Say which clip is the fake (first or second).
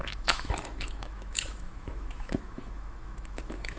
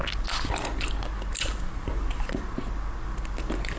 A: first